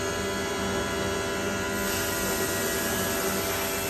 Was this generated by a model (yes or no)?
no